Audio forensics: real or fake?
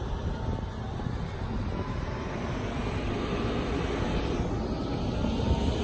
real